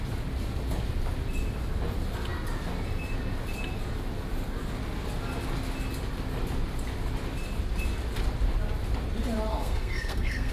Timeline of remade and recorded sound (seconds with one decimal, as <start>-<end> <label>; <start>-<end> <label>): 0.0-9.5 recorded; 9.5-10.5 remade